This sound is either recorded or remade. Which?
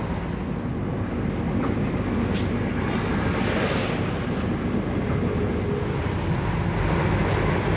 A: recorded